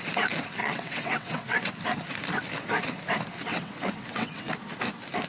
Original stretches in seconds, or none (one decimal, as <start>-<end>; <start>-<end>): 0.0-0.6; 1.7-3.5; 4.5-5.3